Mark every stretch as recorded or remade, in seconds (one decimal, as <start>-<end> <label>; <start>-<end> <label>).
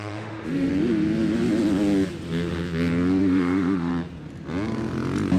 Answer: 0.0-0.7 remade; 0.7-3.2 recorded; 3.2-3.9 remade; 3.9-5.4 recorded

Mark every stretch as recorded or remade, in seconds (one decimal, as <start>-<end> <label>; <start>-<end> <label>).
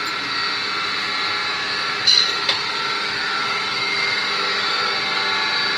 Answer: 0.0-1.4 recorded; 1.4-4.9 remade; 4.9-5.8 recorded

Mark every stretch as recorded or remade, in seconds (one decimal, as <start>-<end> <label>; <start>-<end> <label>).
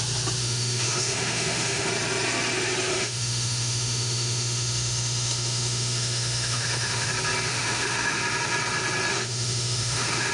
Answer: 0.0-0.4 recorded; 0.4-1.9 remade; 1.9-2.9 recorded; 2.9-7.1 remade; 7.1-7.5 recorded; 7.5-8.2 remade; 8.2-9.1 recorded; 9.1-10.3 remade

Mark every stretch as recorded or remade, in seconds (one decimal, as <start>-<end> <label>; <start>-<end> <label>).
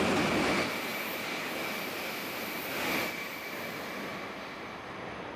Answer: 0.0-5.4 recorded